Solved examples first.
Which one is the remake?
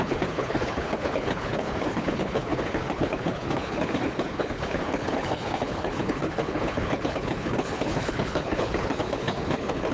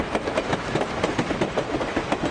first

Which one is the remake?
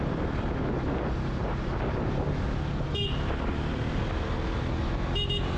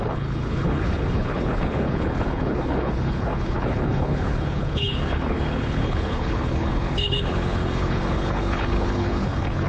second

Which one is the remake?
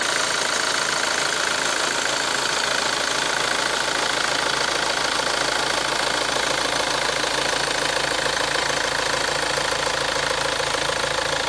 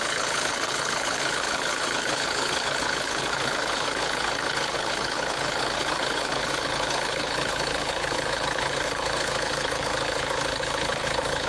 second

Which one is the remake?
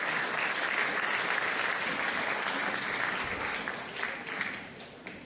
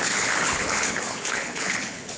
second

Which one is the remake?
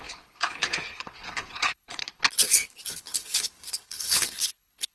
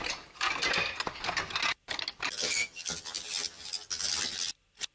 first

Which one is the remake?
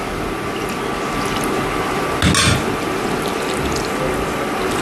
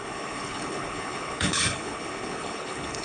second